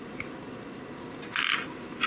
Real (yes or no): yes